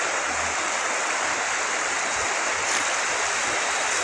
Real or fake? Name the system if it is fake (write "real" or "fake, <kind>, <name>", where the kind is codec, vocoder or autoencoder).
real